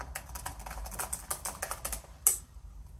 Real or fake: real